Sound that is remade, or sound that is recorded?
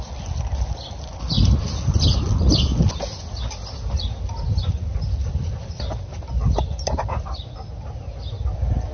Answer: recorded